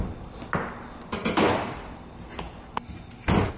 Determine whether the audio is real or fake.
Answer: real